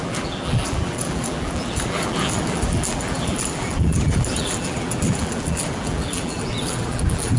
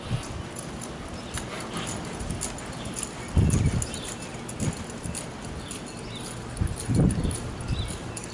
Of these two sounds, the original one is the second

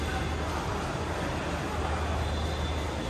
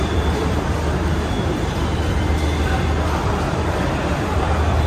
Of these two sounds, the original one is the first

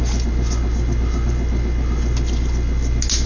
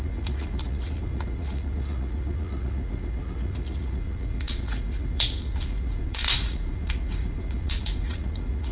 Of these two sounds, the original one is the first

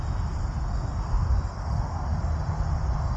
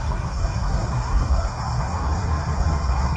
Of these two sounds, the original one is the first